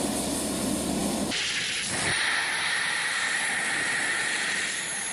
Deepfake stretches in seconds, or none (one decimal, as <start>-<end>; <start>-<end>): none